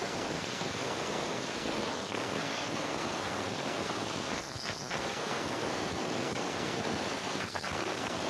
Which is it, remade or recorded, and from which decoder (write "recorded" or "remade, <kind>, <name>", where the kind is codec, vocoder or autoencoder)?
remade, codec, SNAC